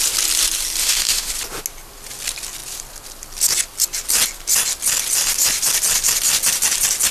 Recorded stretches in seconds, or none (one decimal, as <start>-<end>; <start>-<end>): 0.0-0.8; 1.3-7.1